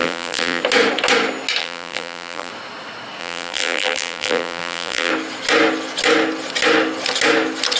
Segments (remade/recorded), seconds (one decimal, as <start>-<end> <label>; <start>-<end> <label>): 0.0-0.6 remade; 0.6-1.6 recorded; 1.6-2.5 remade; 2.5-3.2 recorded; 3.2-5.1 remade; 5.1-7.8 recorded